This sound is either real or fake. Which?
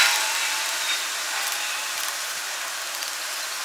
real